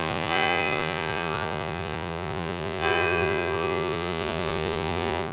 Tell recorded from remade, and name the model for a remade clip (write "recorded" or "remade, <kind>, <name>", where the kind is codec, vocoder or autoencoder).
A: remade, vocoder, Vocos